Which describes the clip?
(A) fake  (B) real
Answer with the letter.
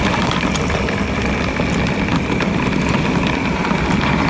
A